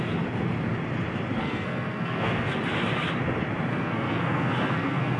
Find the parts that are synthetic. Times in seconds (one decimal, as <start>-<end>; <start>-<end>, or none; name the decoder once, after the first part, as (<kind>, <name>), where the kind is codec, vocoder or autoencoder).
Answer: 1.4-2.5 (codec, SNAC); 3.7-5.2